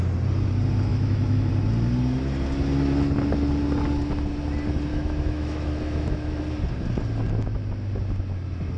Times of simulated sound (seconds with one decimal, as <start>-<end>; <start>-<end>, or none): 0.9-1.5; 4.9-6.4